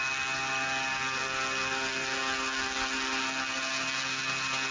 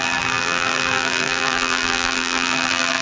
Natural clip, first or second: first